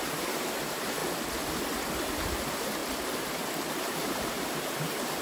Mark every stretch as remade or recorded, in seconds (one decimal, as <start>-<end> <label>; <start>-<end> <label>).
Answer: 0.0-1.0 remade; 1.0-2.0 recorded; 2.0-2.8 remade; 2.8-3.7 recorded; 3.7-5.2 remade